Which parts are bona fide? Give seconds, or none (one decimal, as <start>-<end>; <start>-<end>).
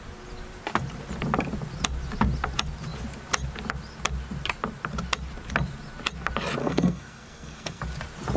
0.0-6.6; 7.8-8.4